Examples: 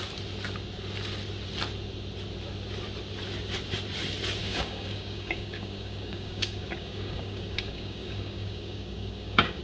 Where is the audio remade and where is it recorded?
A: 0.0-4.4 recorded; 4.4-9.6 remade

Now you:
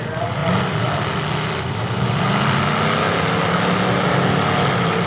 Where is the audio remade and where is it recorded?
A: 0.0-5.1 recorded

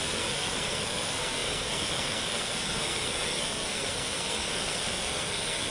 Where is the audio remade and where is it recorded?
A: 0.0-5.7 remade